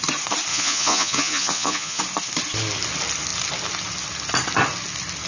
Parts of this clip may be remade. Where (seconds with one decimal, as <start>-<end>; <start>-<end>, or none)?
0.5-2.0